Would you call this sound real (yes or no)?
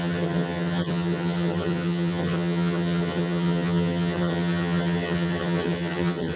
no